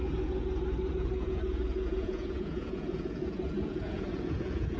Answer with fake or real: fake